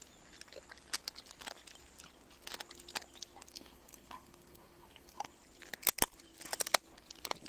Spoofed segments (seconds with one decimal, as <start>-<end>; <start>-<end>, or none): 3.5-5.3